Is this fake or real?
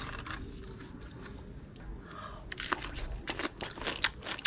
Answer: real